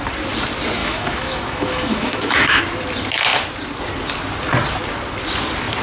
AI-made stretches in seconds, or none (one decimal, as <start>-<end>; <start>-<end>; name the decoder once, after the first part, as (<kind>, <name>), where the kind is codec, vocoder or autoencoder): 0.8-2.6 (autoencoder, DAC-VAE)